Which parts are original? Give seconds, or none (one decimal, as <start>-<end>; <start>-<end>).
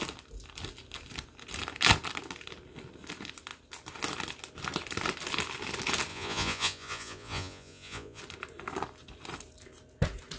0.0-6.1; 8.2-10.4